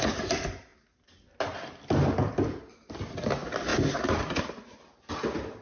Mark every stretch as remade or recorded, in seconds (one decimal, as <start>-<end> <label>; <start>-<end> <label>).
0.0-3.7 recorded; 3.7-5.1 remade; 5.1-5.6 recorded